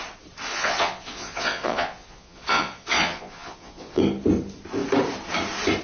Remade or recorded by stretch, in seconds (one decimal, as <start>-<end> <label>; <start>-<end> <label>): 0.0-0.5 recorded; 0.5-4.0 remade; 4.0-5.8 recorded